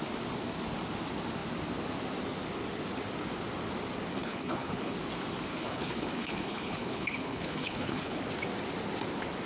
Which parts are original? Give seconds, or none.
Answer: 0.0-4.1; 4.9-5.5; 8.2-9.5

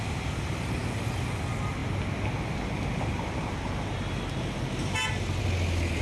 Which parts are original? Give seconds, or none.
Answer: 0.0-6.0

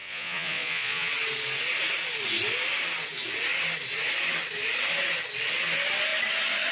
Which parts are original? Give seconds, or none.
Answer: 1.1-6.7

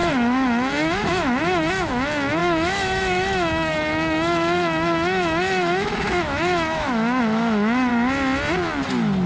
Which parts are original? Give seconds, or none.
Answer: 7.9-9.3